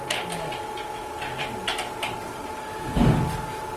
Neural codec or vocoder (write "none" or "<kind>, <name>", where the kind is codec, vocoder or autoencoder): none